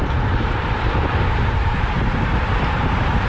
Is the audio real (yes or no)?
no